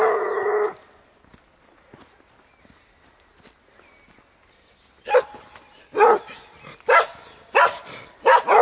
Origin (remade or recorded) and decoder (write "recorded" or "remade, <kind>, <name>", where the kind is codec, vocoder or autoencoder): recorded